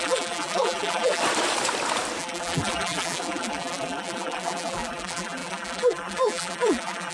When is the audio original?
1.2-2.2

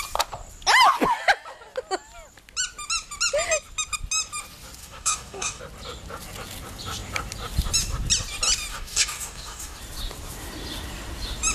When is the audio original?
0.0-4.8; 5.6-8.7; 9.8-11.5